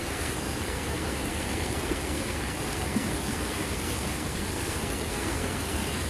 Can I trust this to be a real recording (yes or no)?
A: no